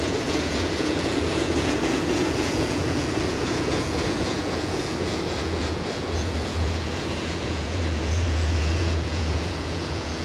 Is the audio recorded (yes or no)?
no